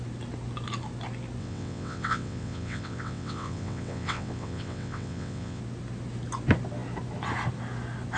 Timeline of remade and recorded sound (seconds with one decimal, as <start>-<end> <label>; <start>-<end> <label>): 0.0-1.4 recorded; 1.4-5.6 remade; 5.6-8.2 recorded